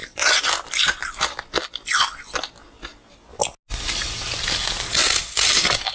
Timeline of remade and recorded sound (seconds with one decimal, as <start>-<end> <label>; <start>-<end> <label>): 0.0-1.3 remade; 1.3-5.0 recorded; 5.0-5.9 remade